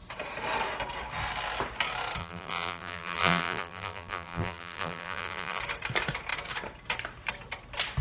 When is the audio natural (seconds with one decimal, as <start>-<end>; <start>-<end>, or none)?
0.0-2.2; 5.6-8.0